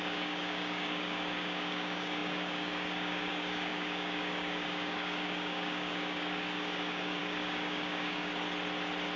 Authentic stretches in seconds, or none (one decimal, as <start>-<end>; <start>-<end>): 8.3-9.2